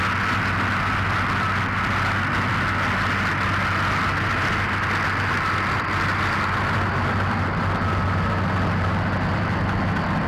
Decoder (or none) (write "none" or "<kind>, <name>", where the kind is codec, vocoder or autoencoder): none